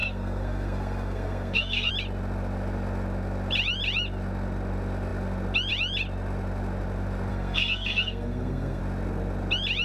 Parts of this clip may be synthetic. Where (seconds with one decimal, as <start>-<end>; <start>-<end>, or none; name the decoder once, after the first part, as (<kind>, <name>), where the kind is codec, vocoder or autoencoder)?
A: 0.0-1.9 (codec, SNAC); 7.3-8.8